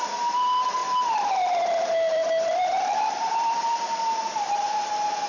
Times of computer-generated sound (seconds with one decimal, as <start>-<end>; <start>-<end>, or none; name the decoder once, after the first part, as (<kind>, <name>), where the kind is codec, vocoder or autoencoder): 0.8-4.0 (vocoder, BigVGAN v2)